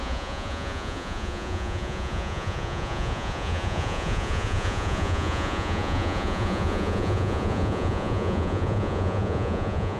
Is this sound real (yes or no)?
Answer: no